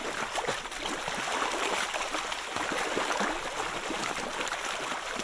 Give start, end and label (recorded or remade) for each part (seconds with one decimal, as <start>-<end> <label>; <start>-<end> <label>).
0.0-5.2 recorded